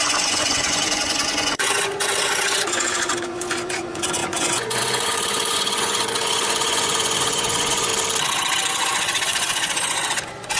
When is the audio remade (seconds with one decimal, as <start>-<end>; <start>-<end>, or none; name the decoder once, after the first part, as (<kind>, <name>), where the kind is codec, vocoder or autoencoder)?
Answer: 0.0-7.9 (vocoder, Vocos); 8.7-10.6